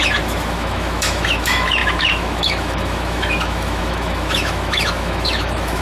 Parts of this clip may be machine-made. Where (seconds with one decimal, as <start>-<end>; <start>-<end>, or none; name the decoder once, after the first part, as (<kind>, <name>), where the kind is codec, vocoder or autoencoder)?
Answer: 0.0-5.8 (autoencoder, DAC-VAE)